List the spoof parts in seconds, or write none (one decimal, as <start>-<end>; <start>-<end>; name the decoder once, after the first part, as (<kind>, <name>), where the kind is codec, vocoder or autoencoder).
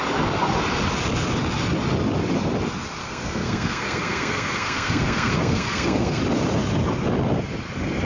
3.0-6.2 (codec, SNAC)